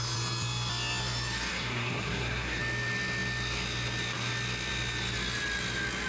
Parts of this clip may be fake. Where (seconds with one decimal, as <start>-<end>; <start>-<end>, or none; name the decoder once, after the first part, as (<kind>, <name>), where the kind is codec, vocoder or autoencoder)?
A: 1.5-2.6 (codec, SNAC)